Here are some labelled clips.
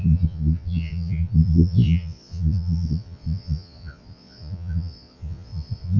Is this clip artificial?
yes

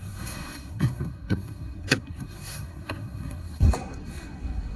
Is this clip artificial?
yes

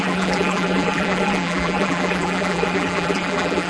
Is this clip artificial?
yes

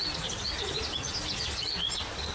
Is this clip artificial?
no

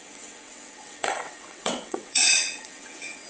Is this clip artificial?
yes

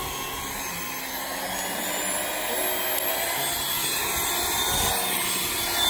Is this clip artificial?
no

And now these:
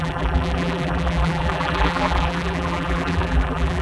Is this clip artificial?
yes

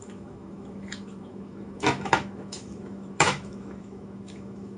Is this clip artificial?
yes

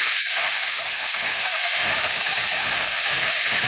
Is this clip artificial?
yes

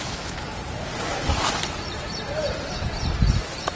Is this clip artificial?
yes